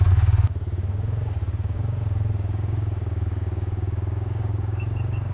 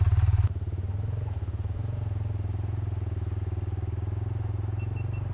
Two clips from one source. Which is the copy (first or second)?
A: first